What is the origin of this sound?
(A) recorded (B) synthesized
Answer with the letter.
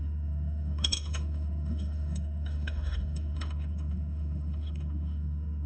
B